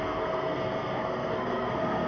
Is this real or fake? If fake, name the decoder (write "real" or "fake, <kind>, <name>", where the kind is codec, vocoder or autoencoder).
fake, codec, SNAC